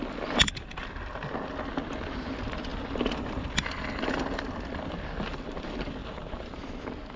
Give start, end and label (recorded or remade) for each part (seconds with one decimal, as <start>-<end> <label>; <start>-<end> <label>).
0.0-6.0 recorded; 6.0-6.6 remade; 6.6-7.2 recorded